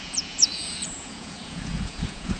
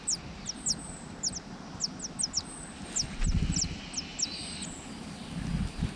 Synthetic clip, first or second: first